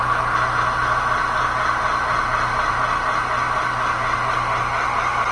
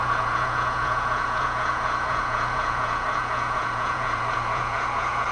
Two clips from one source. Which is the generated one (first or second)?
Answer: second